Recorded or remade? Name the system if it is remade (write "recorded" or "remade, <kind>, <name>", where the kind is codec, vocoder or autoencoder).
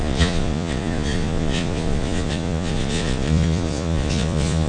remade, vocoder, Vocos